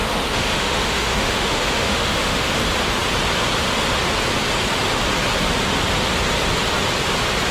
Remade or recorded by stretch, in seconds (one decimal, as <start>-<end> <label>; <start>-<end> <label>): 0.0-2.6 remade; 2.6-7.5 recorded